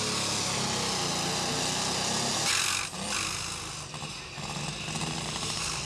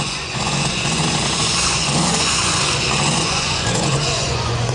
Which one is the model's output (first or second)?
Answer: second